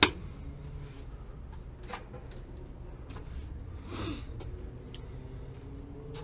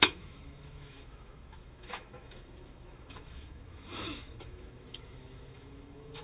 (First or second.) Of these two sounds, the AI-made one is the second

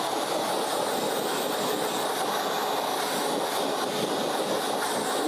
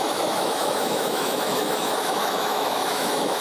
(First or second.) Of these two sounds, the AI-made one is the second